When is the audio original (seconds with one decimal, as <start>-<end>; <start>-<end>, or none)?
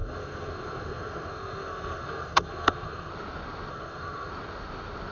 3.1-3.7; 4.3-5.1